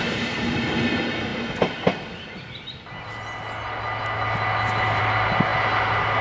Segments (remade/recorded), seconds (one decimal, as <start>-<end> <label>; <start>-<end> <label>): 0.0-6.2 recorded

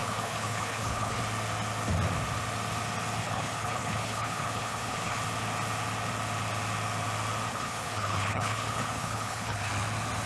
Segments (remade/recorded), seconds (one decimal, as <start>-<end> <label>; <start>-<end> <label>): 0.0-1.2 remade; 1.2-3.2 recorded; 3.2-5.2 remade; 5.2-7.5 recorded; 7.5-9.7 remade; 9.7-10.3 recorded